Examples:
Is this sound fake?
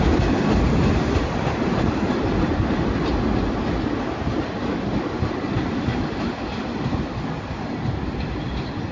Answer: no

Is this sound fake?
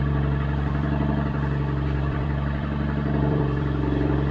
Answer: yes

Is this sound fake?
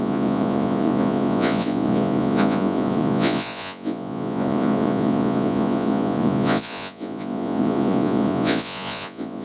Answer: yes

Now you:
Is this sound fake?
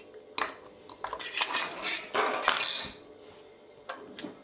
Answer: no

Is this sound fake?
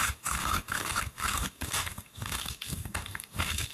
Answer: yes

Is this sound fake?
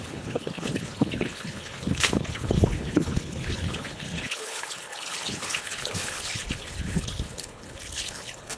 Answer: yes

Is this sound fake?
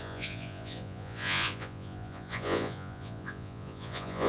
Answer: yes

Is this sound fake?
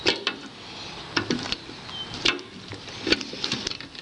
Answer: no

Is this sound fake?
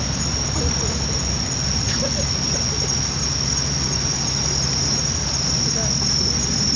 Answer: no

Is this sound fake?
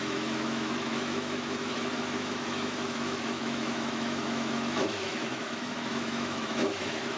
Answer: yes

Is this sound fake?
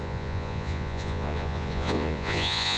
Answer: yes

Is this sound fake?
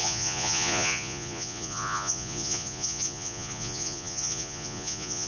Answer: yes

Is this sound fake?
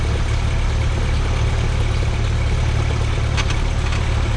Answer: no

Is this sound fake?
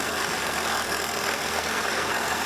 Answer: yes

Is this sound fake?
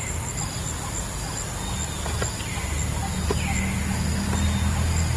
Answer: no